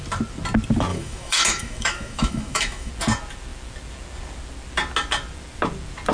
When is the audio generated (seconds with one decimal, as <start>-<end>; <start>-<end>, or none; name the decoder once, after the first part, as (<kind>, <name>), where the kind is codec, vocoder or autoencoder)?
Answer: 0.9-2.9 (autoencoder, DAC-VAE)